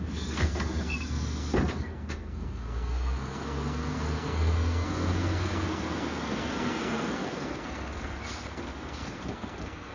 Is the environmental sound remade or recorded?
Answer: remade